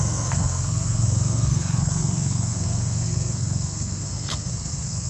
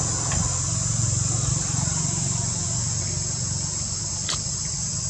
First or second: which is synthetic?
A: first